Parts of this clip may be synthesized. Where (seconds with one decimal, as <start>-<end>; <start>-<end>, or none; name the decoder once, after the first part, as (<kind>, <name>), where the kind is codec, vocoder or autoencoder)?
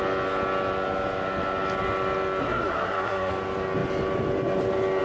2.4-3.3 (codec, SNAC)